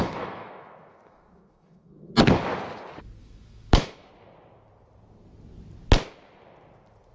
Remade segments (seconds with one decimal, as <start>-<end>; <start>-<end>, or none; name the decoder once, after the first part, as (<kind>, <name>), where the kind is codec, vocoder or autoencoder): 0.0-2.1 (autoencoder, DAC-VAE); 3.2-4.1